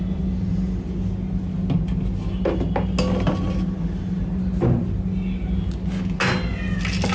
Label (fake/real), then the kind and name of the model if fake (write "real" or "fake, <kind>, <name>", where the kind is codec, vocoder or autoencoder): real